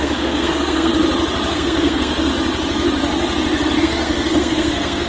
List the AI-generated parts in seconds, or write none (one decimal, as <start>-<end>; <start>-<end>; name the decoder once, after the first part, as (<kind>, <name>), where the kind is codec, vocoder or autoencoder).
0.0-0.9 (codec, SNAC); 1.5-2.3; 3.8-5.1